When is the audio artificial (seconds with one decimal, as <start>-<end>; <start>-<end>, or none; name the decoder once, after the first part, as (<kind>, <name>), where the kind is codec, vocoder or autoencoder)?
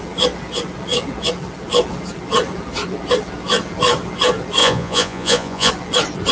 4.6-5.7 (vocoder, Vocos)